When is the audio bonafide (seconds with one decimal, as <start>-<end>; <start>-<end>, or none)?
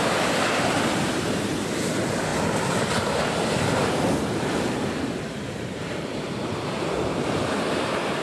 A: none